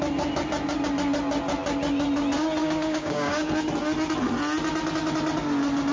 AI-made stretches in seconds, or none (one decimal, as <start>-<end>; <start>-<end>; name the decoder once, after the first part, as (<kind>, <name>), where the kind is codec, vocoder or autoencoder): 2.6-3.5 (codec, DAC)